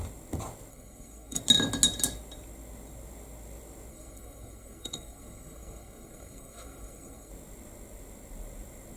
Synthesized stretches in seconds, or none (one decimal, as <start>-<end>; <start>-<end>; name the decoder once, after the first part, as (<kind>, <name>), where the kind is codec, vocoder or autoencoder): 0.7-1.4 (codec, SNAC); 3.9-7.3